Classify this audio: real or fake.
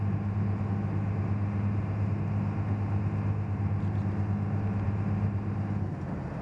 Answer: real